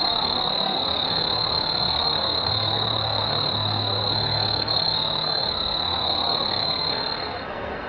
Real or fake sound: fake